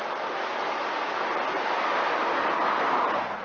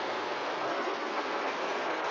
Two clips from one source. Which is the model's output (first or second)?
second